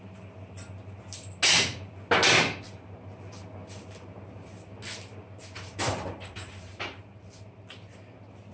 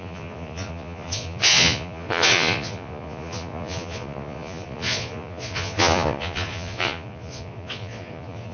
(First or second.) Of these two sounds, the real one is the first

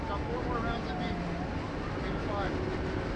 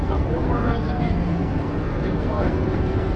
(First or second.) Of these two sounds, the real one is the first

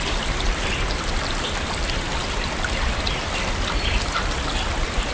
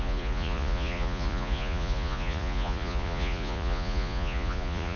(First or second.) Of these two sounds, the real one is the first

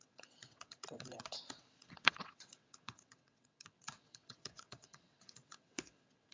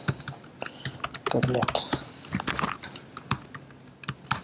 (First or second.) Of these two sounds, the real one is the second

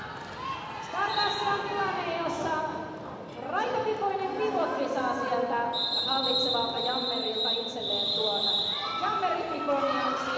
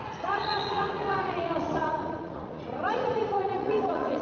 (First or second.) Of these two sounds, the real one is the first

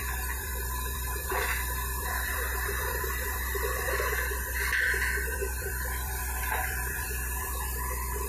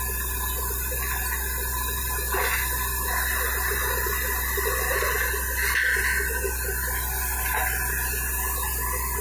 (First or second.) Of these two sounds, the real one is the second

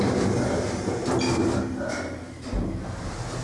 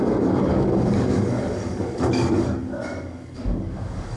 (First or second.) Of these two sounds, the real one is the first